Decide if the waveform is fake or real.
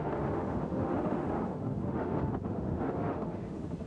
fake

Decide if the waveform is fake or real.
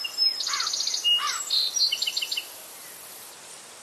real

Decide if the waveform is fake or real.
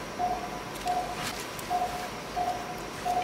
real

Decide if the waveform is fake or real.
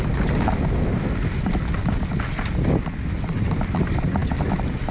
real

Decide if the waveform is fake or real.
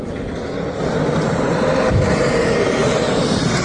real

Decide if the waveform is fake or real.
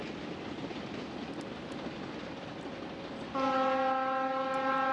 real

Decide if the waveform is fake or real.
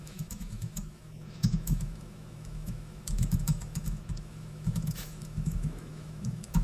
fake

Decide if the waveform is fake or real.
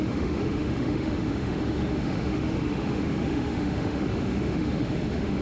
fake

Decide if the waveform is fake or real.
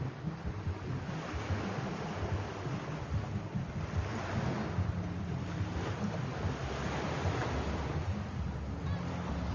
real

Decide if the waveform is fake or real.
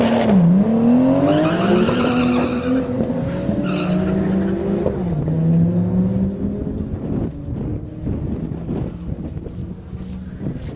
real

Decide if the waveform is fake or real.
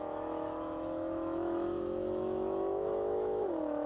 fake